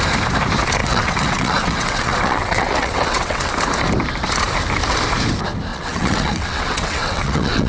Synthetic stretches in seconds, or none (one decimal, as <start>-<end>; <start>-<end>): 0.8-3.5; 5.7-7.7

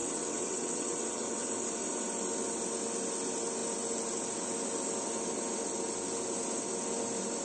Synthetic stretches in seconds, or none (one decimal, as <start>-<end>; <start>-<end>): 0.0-1.5

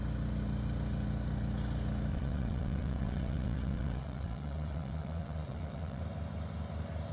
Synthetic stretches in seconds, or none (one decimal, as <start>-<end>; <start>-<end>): 2.1-6.0

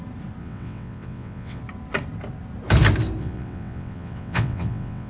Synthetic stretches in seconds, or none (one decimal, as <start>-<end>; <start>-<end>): 0.4-1.6; 3.2-5.1

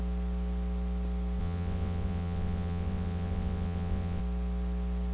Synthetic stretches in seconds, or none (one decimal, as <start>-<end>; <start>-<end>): 1.4-4.2

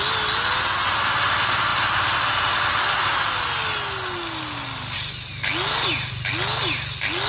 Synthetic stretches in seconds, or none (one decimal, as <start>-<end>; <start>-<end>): none

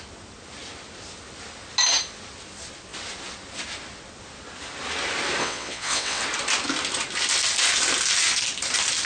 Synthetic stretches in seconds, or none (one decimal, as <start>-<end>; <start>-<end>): 5.4-6.2